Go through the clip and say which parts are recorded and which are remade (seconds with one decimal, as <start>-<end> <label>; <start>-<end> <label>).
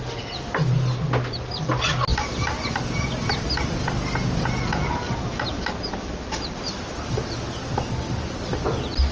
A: 0.0-9.1 recorded